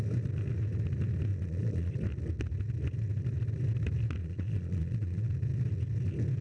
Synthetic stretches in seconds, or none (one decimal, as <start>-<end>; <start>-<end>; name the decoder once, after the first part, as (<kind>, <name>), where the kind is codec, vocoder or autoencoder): 1.3-1.9 (vocoder, Vocos); 4.2-5.3